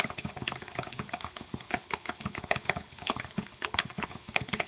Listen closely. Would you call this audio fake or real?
fake